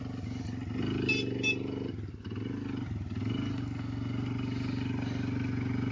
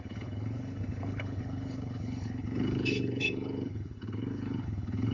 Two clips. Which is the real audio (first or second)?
first